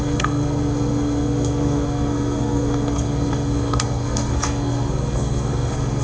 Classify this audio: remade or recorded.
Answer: remade